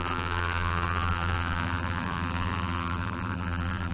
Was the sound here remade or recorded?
remade